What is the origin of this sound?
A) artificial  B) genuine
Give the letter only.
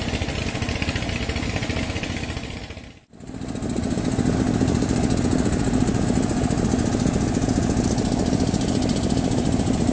B